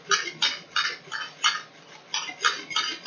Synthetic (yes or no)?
no